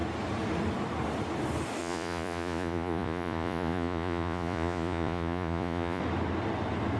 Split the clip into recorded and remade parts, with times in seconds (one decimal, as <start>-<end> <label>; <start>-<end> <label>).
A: 0.0-1.8 recorded; 1.8-6.0 remade; 6.0-7.0 recorded